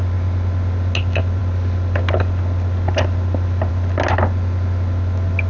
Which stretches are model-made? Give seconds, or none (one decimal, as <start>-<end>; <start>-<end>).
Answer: none